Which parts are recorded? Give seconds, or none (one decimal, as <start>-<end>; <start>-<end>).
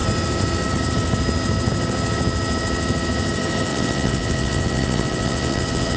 0.0-3.7